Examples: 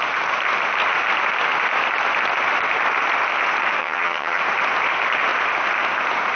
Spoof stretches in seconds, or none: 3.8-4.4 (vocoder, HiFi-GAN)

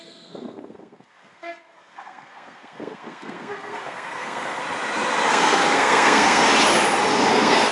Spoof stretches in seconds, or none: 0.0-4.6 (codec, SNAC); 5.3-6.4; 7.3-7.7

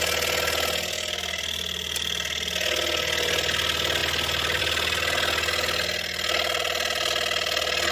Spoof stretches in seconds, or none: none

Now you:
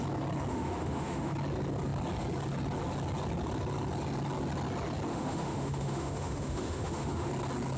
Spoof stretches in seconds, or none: 0.5-1.3 (autoencoder, DAC-VAE); 5.1-7.3

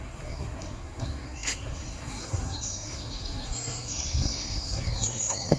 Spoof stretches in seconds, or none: 0.0-5.6 (codec, SNAC)

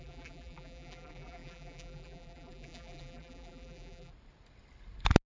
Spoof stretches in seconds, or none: 0.0-4.1 (vocoder, BigVGAN v2)

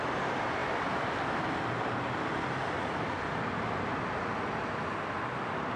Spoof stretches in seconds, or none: 0.6-1.2 (vocoder, BigVGAN v2)

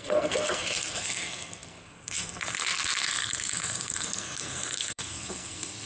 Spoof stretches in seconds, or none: 0.0-5.9 (codec, SNAC)